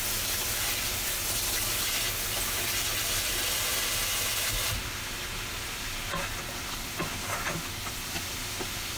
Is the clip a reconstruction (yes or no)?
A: no